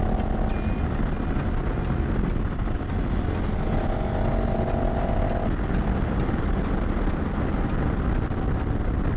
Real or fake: real